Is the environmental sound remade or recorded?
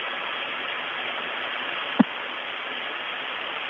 recorded